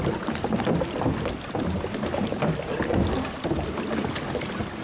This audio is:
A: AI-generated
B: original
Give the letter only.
B